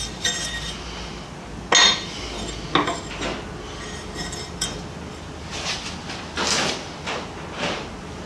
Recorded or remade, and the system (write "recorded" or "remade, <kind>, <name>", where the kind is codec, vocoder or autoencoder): recorded